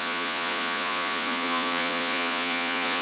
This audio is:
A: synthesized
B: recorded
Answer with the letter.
A